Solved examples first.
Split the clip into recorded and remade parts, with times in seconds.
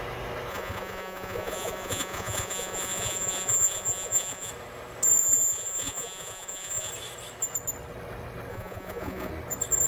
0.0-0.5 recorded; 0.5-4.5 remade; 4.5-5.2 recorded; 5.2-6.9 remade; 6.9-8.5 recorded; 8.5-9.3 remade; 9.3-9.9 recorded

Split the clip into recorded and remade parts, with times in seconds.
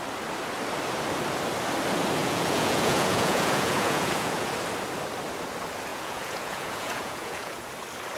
0.0-2.2 recorded; 2.2-4.5 remade; 4.5-5.9 recorded; 5.9-7.7 remade; 7.7-8.2 recorded